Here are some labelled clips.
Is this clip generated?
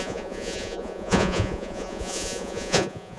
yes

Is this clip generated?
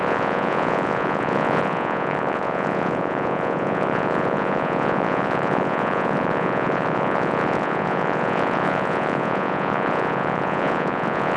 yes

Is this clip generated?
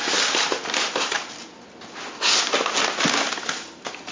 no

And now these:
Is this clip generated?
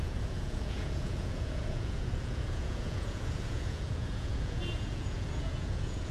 yes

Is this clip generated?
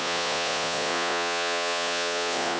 yes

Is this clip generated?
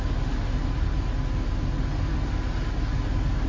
no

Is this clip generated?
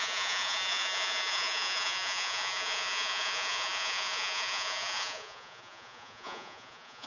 yes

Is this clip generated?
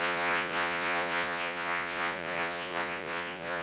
yes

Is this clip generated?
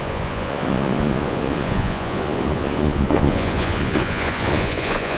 yes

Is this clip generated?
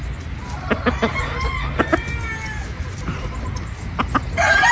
no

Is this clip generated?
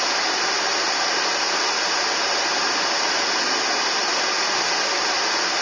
no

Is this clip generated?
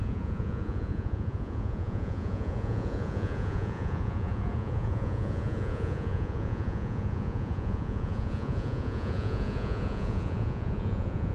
yes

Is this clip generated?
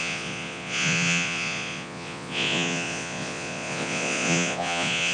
yes